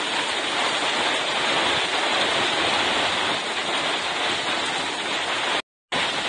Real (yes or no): yes